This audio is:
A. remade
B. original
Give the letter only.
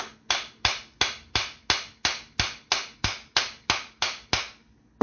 B